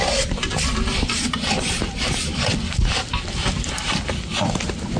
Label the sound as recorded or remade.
remade